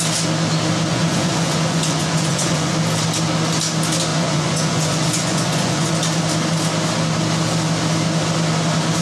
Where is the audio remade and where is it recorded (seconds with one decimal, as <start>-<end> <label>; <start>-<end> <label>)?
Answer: 0.0-0.9 recorded; 0.9-2.7 remade; 2.7-4.1 recorded; 4.1-5.9 remade; 5.9-9.0 recorded